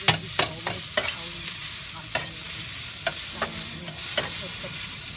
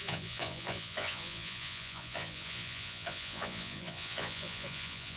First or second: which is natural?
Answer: first